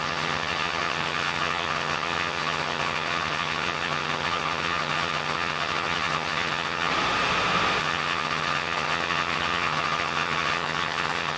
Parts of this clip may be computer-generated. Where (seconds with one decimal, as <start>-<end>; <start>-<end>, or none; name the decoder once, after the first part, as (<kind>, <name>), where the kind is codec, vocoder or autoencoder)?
0.0-6.9 (vocoder, HiFi-GAN); 7.8-11.4